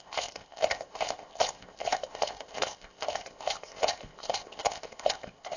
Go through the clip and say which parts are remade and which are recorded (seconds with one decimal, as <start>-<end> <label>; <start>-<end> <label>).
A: 0.0-5.6 remade